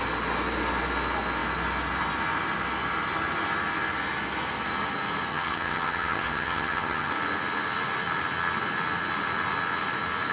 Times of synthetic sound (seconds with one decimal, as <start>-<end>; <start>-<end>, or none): 5.3-7.1